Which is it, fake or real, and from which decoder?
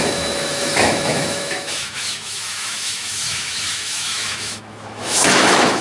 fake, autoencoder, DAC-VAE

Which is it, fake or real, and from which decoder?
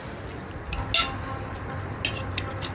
real